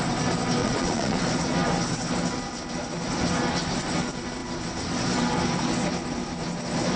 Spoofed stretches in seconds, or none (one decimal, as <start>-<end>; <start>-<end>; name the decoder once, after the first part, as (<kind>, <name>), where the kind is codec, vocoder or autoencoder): 0.6-1.2 (vocoder, Vocos)